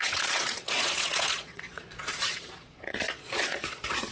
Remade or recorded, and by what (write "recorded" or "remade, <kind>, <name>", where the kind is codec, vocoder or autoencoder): remade, vocoder, Vocos